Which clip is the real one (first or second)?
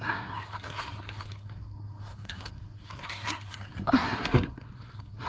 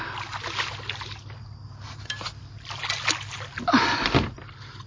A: second